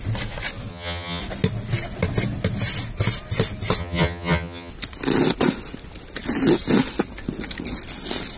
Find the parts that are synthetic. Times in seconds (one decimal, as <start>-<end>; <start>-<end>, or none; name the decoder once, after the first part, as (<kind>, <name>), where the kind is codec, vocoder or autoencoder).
0.7-1.2 (vocoder, HiFi-GAN); 3.8-4.7